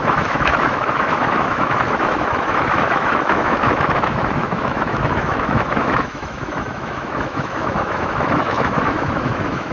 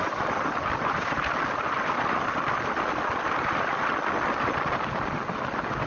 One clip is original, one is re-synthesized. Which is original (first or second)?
second